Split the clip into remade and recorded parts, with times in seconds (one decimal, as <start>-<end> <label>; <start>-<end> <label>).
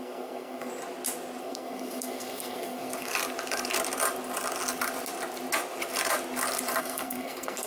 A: 0.0-0.7 remade; 0.7-1.4 recorded; 1.4-3.1 remade; 3.1-6.8 recorded; 6.8-7.7 remade